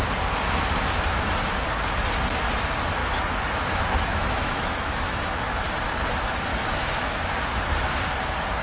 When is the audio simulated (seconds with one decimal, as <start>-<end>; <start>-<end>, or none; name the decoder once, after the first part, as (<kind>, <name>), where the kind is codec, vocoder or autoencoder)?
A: 3.0-5.3 (autoencoder, DAC-VAE); 6.5-7.3